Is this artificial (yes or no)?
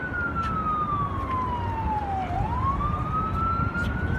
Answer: no